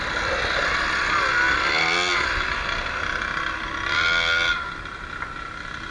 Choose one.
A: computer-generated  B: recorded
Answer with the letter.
B